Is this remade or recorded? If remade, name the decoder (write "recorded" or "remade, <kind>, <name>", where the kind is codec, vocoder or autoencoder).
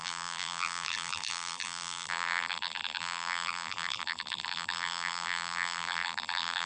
remade, vocoder, BigVGAN v2